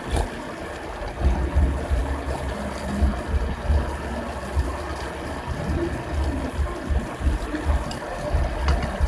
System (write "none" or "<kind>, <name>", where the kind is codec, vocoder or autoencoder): none